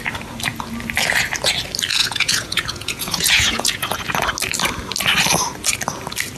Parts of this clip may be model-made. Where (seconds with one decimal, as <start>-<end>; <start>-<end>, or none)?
2.0-4.1